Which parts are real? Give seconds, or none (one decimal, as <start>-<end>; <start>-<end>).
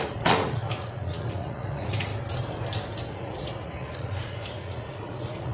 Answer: 2.1-3.1